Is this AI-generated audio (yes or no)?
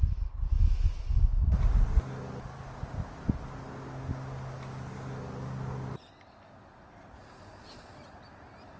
no